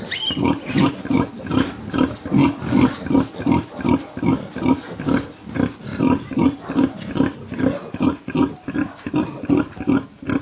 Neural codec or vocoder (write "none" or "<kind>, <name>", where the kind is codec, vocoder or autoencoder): none